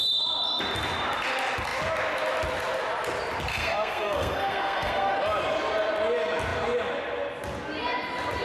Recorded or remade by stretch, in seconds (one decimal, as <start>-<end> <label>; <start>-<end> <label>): 0.0-3.5 recorded; 3.5-5.1 remade; 5.1-8.4 recorded